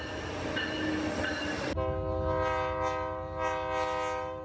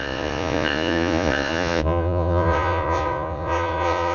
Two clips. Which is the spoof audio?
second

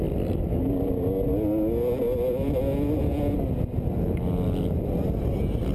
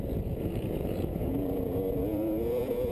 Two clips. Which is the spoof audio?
second